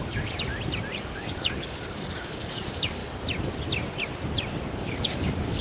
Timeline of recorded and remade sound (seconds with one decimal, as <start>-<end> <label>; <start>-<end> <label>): 0.0-0.5 remade; 0.5-1.0 recorded; 1.0-3.0 remade; 3.0-4.6 recorded; 4.6-5.6 remade